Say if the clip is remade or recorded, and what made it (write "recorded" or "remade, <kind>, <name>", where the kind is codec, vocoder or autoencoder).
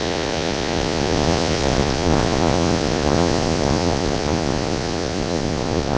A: remade, vocoder, Vocos